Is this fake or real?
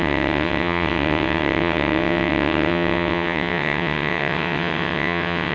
fake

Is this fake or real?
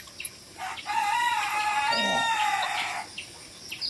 real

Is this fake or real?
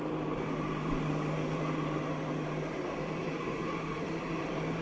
fake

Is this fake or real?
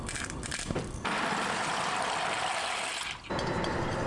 real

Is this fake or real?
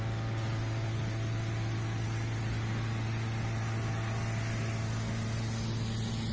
real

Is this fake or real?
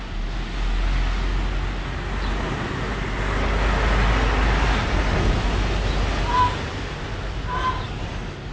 real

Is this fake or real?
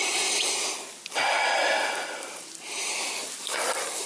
real